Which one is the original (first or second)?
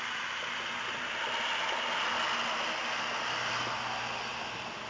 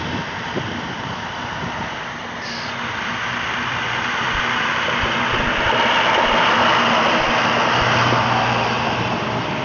first